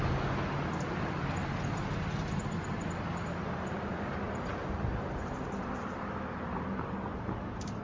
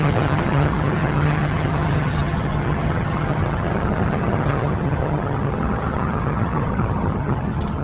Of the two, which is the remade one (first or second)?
second